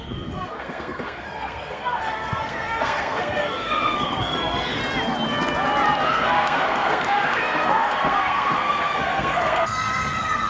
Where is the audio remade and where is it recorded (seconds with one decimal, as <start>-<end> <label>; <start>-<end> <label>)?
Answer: 0.0-4.8 remade; 4.8-6.1 recorded; 6.1-10.5 remade